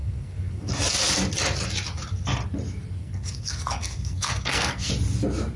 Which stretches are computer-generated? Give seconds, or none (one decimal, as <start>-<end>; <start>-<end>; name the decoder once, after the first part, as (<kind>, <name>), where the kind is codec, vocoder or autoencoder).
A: 0.0-0.7 (codec, SNAC); 3.0-4.9